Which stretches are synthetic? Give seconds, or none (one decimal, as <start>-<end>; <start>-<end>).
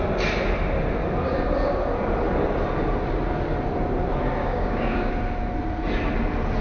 4.4-5.1